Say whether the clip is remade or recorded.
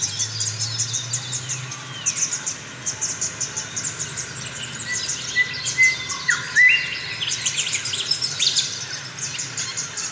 recorded